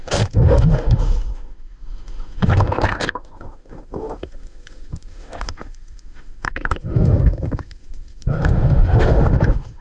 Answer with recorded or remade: remade